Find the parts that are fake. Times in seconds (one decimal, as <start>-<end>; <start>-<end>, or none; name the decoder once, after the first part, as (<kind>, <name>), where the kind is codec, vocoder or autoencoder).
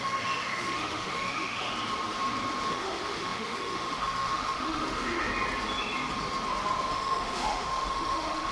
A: 0.0-1.7 (autoencoder, DAC-VAE); 2.7-5.3; 6.9-8.5